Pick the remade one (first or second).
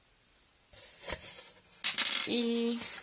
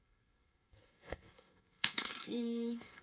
second